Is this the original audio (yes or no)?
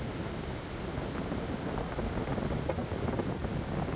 yes